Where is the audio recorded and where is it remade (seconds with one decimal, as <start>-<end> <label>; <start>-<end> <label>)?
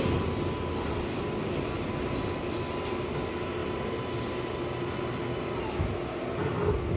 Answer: 0.0-3.6 recorded; 3.6-4.6 remade; 4.6-7.0 recorded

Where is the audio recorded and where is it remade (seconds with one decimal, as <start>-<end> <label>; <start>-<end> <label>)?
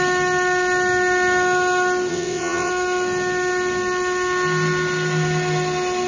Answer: 0.0-2.1 recorded; 2.1-2.7 remade; 2.7-6.1 recorded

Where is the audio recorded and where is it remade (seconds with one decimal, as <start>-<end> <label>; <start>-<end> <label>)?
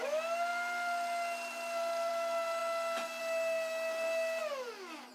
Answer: 0.0-5.1 recorded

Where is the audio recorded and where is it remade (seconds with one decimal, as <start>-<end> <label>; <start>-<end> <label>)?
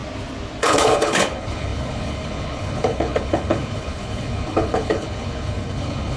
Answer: 0.0-0.6 recorded; 0.6-6.2 remade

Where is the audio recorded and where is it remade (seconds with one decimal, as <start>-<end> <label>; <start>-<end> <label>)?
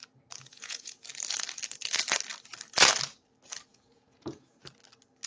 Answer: 0.0-0.5 recorded; 0.5-1.0 remade; 1.0-3.7 recorded; 3.7-4.6 remade; 4.6-5.3 recorded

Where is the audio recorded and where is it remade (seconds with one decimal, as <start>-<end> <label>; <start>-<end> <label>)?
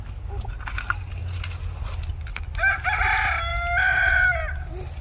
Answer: 0.0-5.0 recorded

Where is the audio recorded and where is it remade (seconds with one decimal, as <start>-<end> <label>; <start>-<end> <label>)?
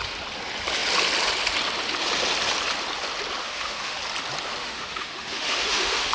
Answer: 0.0-3.4 recorded; 3.4-4.0 remade; 4.0-4.6 recorded; 4.6-6.1 remade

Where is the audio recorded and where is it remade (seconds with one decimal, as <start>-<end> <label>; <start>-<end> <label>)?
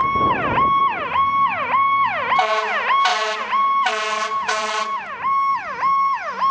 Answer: 0.0-3.1 recorded; 3.1-4.8 remade; 4.8-6.5 recorded